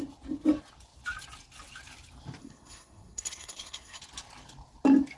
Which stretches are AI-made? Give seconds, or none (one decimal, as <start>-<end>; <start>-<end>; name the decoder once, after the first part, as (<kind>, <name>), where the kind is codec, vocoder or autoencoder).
2.4-4.0 (codec, SNAC)